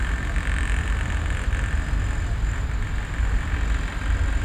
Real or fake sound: real